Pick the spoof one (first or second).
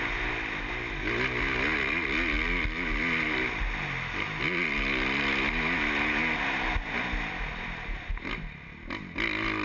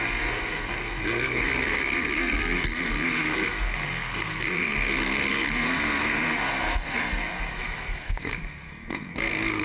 second